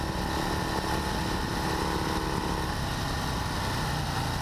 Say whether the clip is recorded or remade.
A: recorded